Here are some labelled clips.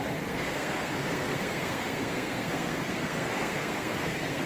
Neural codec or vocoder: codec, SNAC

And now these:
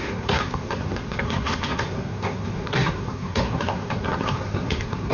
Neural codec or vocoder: codec, SNAC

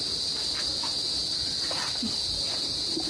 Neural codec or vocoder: none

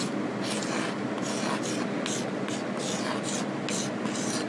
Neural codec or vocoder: none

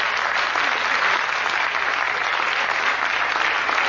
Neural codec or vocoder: none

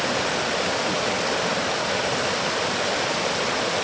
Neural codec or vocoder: none